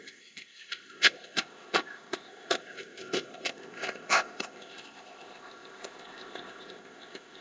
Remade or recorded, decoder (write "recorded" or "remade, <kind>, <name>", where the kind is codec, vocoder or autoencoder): remade, codec, ZipCodec